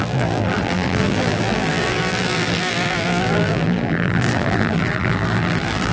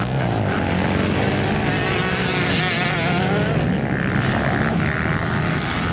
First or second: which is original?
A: second